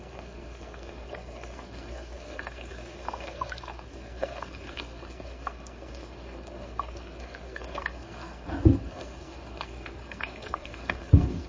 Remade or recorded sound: remade